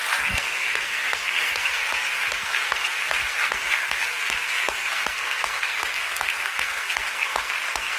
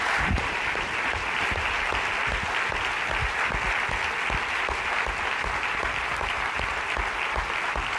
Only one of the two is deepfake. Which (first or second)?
first